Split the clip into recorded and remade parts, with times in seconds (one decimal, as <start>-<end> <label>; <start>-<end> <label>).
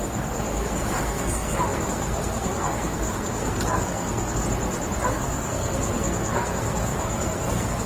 0.0-4.4 remade; 4.4-5.1 recorded; 5.1-7.9 remade